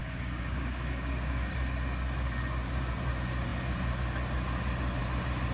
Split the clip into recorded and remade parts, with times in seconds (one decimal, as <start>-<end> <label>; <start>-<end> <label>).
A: 0.0-1.5 remade; 1.5-5.5 recorded